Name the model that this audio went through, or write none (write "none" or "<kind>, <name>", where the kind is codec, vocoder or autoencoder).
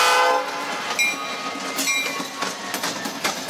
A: none